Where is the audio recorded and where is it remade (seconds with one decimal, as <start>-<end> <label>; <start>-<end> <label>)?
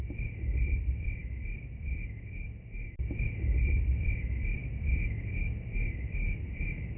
0.0-7.0 recorded